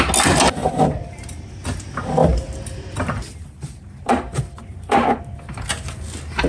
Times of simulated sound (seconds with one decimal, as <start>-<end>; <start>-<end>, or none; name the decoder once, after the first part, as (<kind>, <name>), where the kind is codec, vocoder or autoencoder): 0.6-1.5 (vocoder, BigVGAN v2); 2.2-5.2